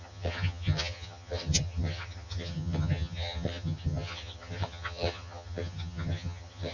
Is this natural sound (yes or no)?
no